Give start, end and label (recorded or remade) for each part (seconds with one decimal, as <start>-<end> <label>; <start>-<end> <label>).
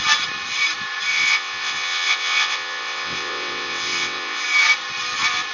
0.0-1.1 recorded; 1.1-4.4 remade; 4.4-5.5 recorded